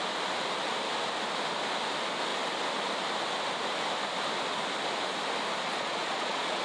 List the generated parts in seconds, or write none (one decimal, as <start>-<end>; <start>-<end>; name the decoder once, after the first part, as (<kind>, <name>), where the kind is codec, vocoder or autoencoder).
5.6-6.6 (vocoder, Vocos)